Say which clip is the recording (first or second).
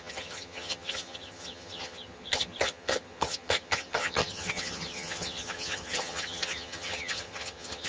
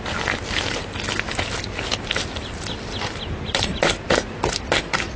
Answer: second